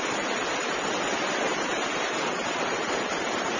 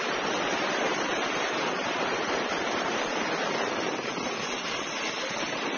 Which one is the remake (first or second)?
second